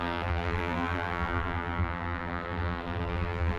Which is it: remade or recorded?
remade